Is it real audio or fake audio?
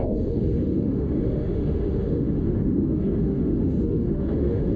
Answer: fake